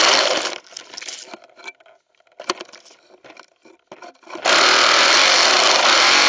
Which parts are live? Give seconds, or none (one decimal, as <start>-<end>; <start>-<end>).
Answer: 0.0-6.3